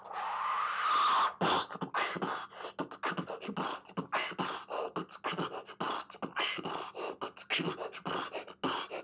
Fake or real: real